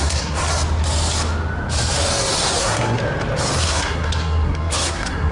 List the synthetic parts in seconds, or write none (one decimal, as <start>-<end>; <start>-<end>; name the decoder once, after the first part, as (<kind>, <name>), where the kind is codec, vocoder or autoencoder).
0.0-0.4 (codec, SNAC); 2.6-3.0; 3.6-5.3